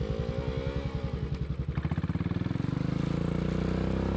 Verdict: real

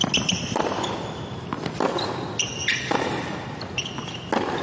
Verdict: real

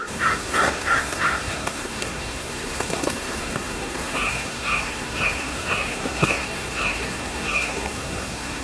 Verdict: fake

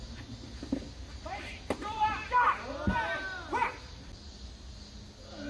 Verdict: real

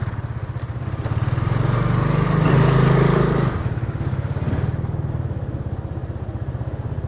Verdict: real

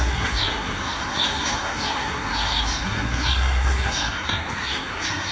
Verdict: fake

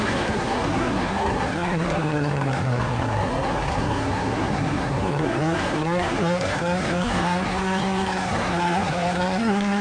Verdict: fake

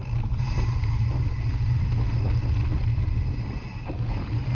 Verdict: real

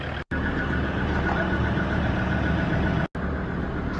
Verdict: real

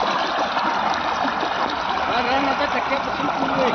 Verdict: real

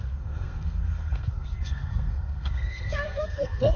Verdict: fake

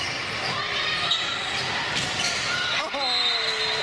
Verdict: real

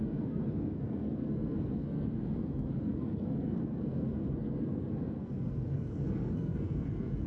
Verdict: fake